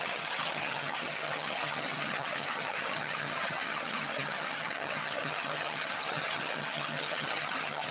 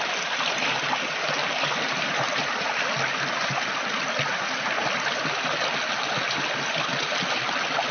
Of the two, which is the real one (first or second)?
second